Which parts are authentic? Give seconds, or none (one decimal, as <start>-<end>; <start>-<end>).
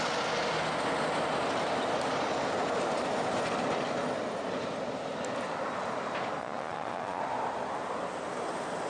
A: 0.0-6.4; 7.2-8.9